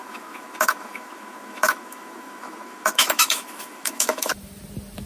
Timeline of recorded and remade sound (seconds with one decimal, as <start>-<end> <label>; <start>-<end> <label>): 0.0-4.3 remade; 4.3-5.1 recorded